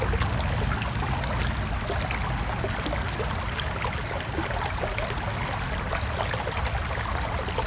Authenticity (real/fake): real